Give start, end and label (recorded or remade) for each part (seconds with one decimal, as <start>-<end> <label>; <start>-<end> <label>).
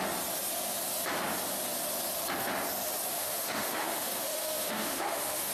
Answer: 0.0-3.1 recorded; 3.1-5.5 remade